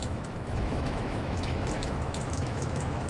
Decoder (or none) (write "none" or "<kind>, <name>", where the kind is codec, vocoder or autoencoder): autoencoder, DAC-VAE